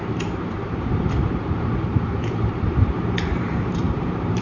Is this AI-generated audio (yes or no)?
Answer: yes